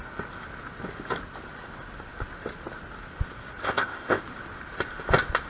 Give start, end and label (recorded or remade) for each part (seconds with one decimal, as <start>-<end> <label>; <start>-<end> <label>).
0.0-3.6 recorded; 3.6-4.2 remade; 4.2-5.5 recorded